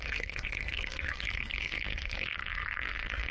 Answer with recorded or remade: remade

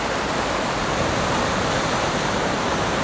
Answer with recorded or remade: remade